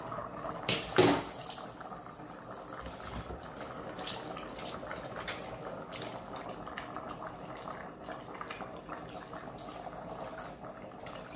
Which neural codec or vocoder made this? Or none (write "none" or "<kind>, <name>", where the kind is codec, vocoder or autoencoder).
none